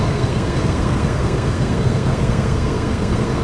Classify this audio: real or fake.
fake